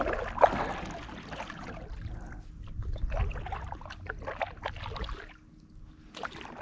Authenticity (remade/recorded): recorded